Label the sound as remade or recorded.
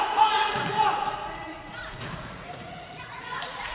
remade